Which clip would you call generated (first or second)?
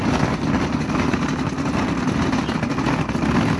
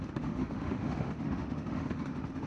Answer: second